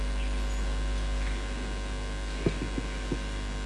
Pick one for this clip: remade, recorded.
recorded